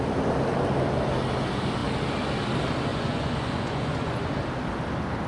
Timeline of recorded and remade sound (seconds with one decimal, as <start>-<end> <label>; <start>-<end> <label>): 0.0-2.9 recorded; 2.9-4.3 remade; 4.3-5.3 recorded